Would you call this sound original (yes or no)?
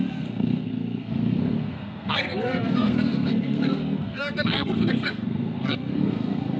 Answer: no